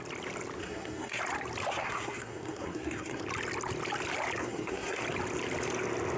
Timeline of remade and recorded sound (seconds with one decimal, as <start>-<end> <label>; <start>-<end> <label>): 0.0-0.6 recorded; 0.6-1.2 remade; 1.2-1.7 recorded; 1.7-3.2 remade; 3.2-4.4 recorded; 4.4-5.0 remade; 5.0-6.2 recorded